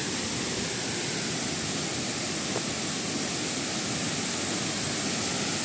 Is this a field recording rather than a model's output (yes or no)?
yes